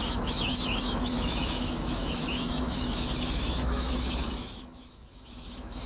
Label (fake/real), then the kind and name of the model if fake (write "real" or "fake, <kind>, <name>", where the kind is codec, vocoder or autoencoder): fake, autoencoder, DAC-VAE